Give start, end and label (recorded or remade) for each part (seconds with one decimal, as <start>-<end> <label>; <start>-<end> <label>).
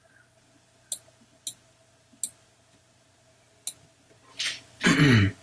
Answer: 0.0-5.4 recorded